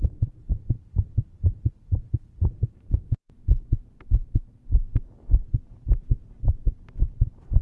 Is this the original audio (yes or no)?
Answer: no